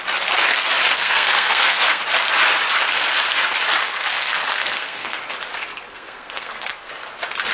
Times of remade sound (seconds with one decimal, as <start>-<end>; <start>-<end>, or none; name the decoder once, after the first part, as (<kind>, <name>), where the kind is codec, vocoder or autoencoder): 0.9-2.0 (codec, SNAC); 3.8-5.2; 5.7-6.9